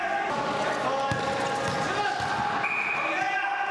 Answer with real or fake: real